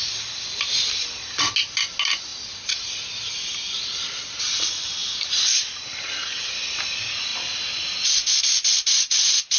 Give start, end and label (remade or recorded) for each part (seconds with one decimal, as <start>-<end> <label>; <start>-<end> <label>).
0.0-9.6 recorded